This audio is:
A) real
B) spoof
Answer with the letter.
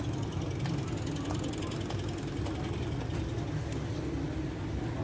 A